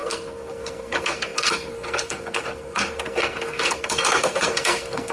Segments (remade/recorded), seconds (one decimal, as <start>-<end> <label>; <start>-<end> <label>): 0.0-5.1 remade